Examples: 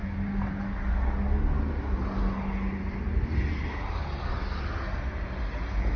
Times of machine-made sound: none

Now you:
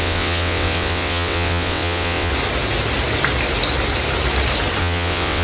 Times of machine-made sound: 0.0-2.3 (vocoder, WaveNeXt); 4.8-5.4

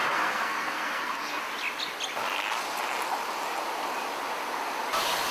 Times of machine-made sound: 0.0-1.4 (codec, SNAC)